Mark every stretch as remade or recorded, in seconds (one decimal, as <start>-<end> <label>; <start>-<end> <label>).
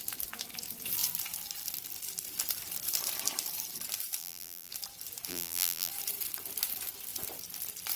0.0-4.2 recorded; 4.2-4.7 remade; 4.7-5.3 recorded; 5.3-5.9 remade; 5.9-8.0 recorded